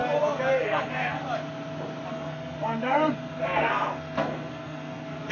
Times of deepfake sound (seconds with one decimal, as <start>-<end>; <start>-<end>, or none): 0.5-1.2; 2.1-5.3